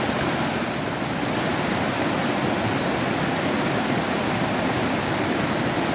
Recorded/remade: recorded